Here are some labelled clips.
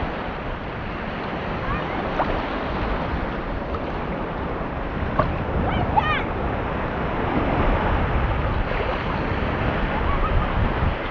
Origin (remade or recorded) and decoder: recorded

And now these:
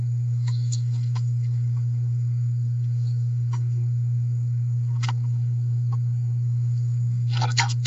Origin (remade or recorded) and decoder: remade, codec, SNAC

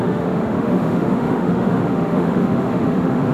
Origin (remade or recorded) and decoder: remade, autoencoder, DAC-VAE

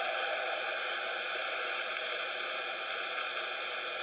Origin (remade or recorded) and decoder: recorded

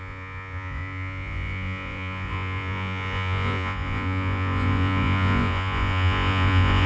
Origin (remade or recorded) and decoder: remade, vocoder, Vocos